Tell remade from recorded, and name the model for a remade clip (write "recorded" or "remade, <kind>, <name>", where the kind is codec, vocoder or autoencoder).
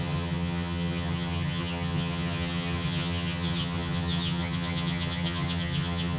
remade, vocoder, HiFi-GAN